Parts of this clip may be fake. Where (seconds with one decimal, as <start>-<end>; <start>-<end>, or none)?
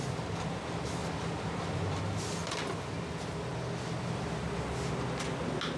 1.0-2.0